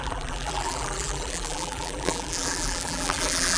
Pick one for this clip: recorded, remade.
remade